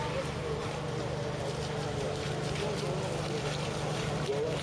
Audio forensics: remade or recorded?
recorded